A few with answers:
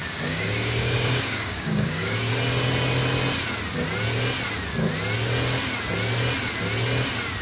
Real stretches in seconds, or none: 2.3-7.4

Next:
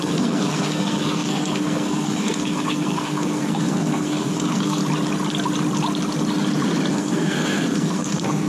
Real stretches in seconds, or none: 4.8-6.9

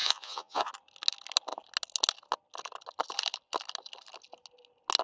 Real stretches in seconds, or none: 0.7-5.0